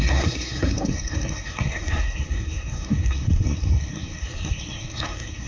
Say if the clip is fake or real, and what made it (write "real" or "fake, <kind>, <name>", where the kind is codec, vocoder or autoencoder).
fake, codec, SNAC